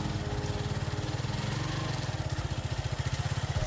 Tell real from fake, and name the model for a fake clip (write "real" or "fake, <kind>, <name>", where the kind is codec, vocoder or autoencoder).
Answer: real